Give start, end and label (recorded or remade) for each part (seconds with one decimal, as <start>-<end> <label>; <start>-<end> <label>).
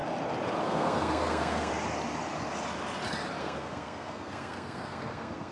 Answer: 0.0-0.6 recorded; 0.6-1.7 remade; 1.7-3.4 recorded; 3.4-5.5 remade